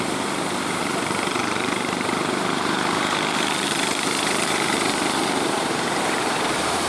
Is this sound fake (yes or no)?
yes